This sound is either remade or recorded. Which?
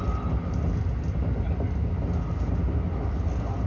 recorded